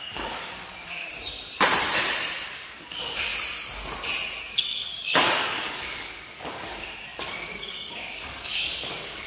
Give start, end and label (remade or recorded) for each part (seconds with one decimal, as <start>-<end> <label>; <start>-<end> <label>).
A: 0.0-1.1 remade; 1.1-2.5 recorded; 2.5-3.3 remade; 3.3-4.4 recorded; 4.4-9.3 remade